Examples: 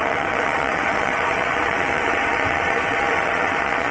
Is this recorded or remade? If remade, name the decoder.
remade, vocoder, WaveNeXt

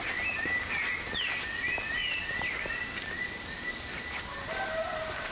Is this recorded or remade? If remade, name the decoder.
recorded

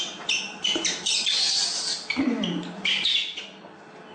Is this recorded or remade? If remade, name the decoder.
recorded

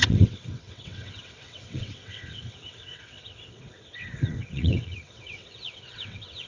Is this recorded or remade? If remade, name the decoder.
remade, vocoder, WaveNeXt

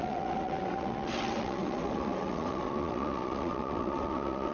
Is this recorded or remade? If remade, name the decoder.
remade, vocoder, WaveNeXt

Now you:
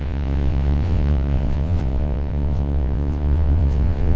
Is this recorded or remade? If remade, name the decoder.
remade, vocoder, WaveNeXt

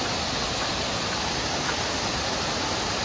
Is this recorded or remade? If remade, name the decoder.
recorded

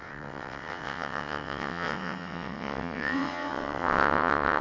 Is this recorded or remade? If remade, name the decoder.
remade, vocoder, WaveNeXt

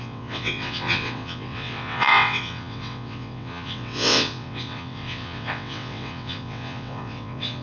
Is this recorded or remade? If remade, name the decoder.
remade, vocoder, WaveNeXt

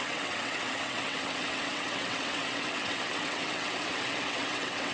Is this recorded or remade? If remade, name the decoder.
remade, vocoder, WaveNeXt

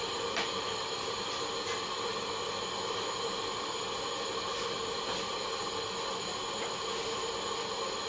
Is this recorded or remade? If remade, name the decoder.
recorded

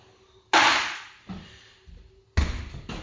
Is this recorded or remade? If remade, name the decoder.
recorded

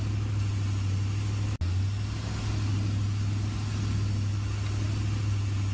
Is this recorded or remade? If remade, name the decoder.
recorded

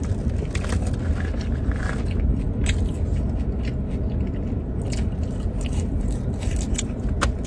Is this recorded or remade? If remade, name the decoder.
recorded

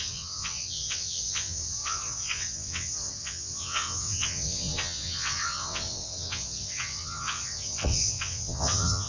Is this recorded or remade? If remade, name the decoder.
remade, vocoder, WaveNeXt